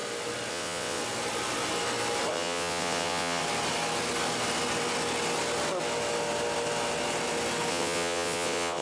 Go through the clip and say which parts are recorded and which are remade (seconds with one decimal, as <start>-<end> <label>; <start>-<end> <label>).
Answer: 0.0-0.5 recorded; 0.5-1.0 remade; 1.0-2.3 recorded; 2.3-3.4 remade; 3.4-7.7 recorded; 7.7-8.8 remade